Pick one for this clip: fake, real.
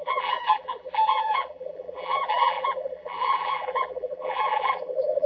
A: fake